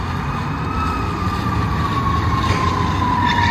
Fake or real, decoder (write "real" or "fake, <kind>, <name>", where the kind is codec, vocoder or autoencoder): real